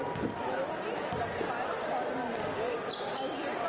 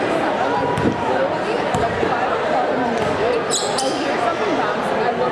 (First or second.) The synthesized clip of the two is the second